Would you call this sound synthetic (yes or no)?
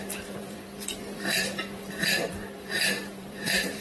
yes